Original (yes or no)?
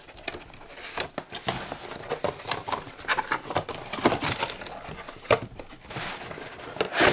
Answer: yes